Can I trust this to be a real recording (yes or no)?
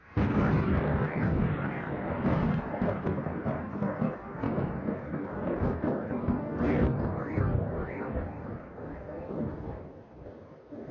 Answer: no